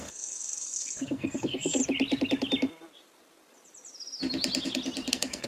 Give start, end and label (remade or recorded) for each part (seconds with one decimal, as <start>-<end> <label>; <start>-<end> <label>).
0.0-1.8 remade; 1.8-5.1 recorded; 5.1-5.5 remade